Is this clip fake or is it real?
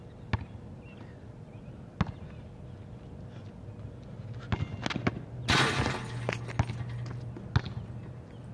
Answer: real